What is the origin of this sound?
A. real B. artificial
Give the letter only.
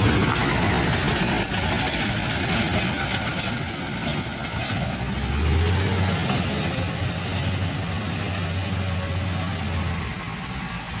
A